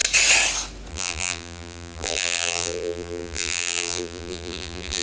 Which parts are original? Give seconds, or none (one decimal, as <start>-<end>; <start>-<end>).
0.0-0.9